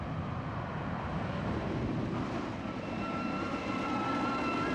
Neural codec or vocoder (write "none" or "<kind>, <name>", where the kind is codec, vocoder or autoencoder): none